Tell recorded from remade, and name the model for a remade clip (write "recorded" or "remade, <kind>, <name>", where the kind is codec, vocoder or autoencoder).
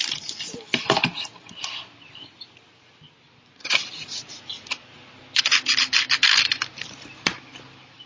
recorded